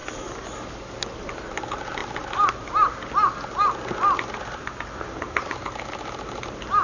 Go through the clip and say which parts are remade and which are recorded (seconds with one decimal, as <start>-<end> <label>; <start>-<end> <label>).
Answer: 0.0-6.8 recorded